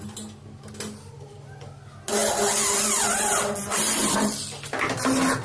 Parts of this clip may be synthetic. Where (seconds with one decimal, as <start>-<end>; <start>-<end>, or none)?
none